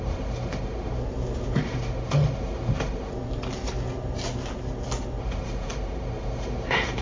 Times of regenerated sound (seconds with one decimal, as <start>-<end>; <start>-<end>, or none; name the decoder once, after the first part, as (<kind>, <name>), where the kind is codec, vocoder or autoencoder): 0.0-1.0 (autoencoder, DAC-VAE); 1.6-3.1; 5.2-7.0